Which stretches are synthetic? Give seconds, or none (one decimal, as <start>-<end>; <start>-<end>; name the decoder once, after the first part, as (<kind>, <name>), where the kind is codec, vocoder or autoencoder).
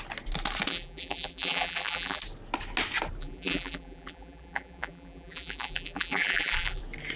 0.7-2.2 (vocoder, BigVGAN v2); 3.2-6.8